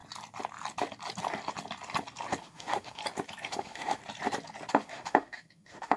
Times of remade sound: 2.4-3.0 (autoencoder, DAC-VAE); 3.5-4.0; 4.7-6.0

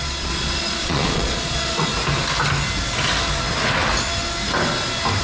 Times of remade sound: 0.0-1.9 (vocoder, Vocos)

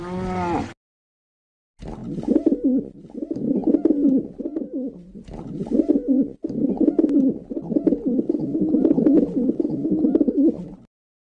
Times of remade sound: none